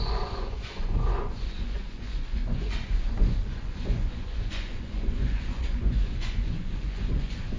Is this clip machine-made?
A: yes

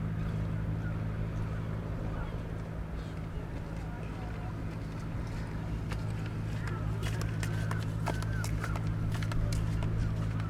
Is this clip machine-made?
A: no